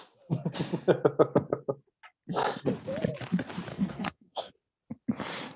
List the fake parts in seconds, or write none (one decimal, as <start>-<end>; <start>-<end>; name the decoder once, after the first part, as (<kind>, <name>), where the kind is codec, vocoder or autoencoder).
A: 3.7-4.5 (codec, SNAC)